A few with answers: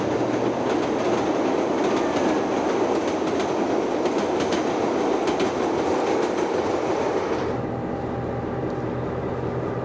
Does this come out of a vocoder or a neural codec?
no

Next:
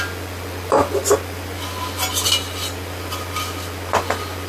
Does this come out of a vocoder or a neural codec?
no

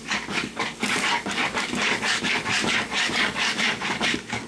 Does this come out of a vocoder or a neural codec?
yes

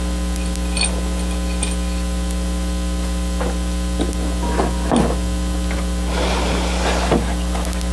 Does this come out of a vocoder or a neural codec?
no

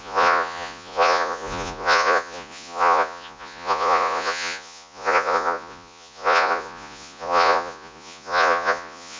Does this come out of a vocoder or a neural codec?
yes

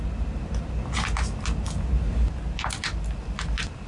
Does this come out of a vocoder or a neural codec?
no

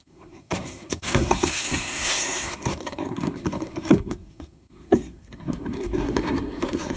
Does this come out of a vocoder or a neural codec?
yes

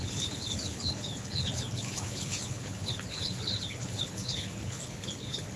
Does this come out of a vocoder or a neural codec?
yes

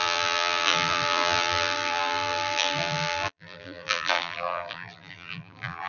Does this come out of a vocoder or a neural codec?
yes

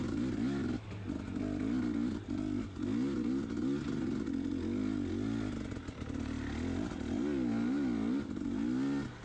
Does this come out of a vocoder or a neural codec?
no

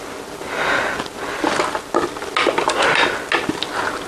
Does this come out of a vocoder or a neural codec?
no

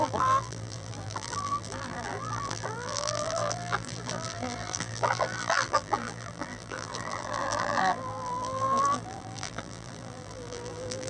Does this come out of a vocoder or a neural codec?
yes